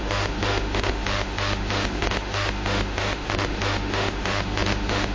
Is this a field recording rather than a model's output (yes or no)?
no